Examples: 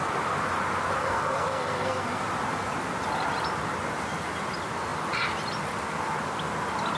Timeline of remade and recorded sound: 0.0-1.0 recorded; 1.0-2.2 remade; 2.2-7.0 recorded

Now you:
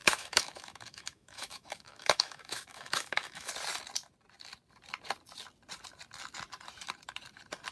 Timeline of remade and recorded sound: 0.0-3.5 remade; 3.5-7.7 recorded

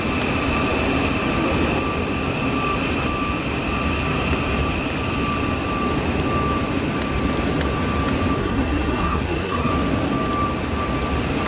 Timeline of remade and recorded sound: 0.0-8.4 recorded; 8.4-9.7 remade; 9.7-11.5 recorded

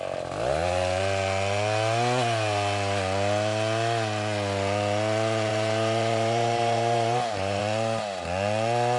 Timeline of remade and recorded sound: 0.0-5.5 recorded; 5.5-7.6 remade; 7.6-9.0 recorded

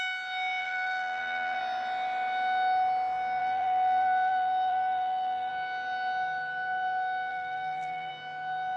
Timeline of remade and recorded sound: 0.0-0.6 recorded; 0.6-1.6 remade; 1.6-3.4 recorded; 3.4-5.5 remade; 5.5-7.3 recorded; 7.3-8.1 remade; 8.1-8.8 recorded

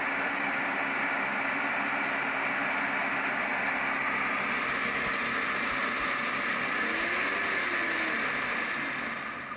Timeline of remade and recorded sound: 0.0-9.6 recorded